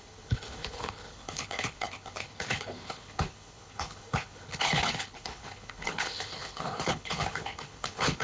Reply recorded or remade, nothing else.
remade